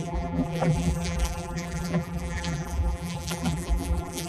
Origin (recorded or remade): remade